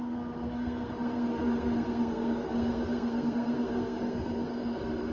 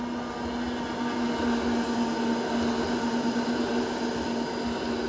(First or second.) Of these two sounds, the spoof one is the first